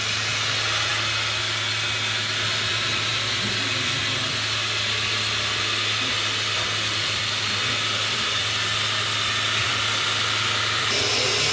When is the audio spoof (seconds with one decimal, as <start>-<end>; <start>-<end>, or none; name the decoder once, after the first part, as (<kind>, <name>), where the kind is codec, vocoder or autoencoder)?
3.1-8.3 (vocoder, BigVGAN v2); 9.7-11.1